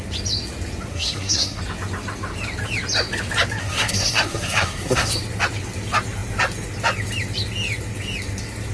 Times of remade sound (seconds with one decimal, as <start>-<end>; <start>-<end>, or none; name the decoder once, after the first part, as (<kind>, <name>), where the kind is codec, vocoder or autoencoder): 0.9-1.6 (codec, SNAC); 3.6-5.1